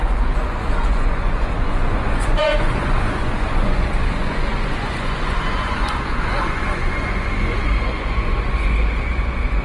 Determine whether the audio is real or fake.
fake